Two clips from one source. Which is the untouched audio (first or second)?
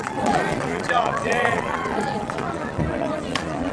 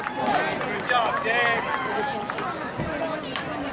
second